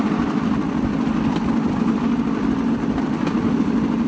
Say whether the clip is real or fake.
real